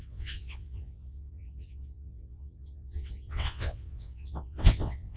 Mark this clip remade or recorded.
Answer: remade